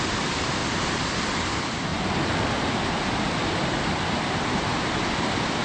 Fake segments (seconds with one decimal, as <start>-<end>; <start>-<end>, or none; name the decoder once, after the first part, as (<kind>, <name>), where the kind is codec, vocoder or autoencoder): none